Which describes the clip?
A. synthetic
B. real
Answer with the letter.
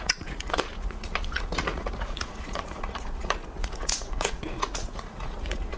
A